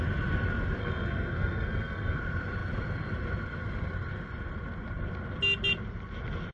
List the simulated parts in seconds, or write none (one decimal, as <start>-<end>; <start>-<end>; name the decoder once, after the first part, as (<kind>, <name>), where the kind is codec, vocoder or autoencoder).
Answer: 0.8-2.2 (codec, SNAC)